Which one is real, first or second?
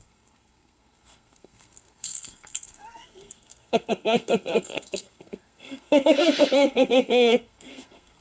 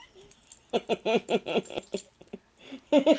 second